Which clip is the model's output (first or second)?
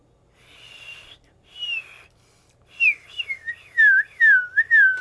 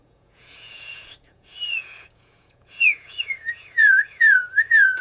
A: second